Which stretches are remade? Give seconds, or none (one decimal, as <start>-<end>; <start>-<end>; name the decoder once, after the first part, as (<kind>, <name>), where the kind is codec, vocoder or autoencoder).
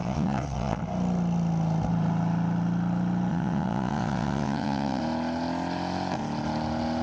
0.0-0.8 (vocoder, WaveNeXt); 3.3-5.0